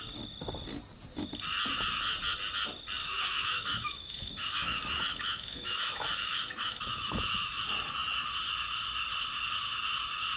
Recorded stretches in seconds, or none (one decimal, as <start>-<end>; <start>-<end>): 0.0-3.0; 7.6-10.4